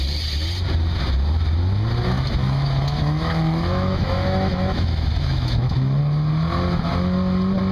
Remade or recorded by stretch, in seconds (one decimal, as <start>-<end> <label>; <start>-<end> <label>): 0.0-2.4 recorded; 2.4-6.0 remade; 6.0-7.7 recorded